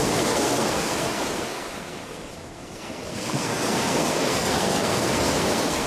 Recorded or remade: remade